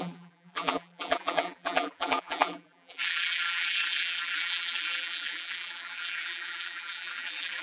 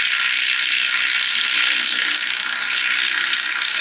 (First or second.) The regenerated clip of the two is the first